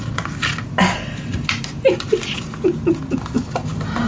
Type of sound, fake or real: real